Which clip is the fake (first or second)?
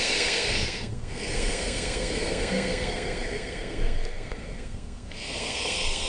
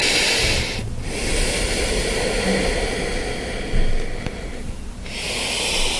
first